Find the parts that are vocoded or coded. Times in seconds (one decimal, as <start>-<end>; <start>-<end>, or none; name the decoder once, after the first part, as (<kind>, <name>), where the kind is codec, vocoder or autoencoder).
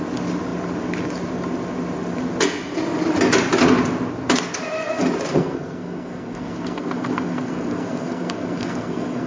5.3-9.3 (codec, SNAC)